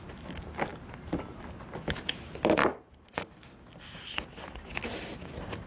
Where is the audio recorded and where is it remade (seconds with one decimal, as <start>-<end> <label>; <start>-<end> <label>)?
0.0-5.7 recorded